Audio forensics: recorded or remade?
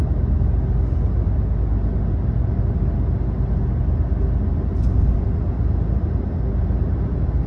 recorded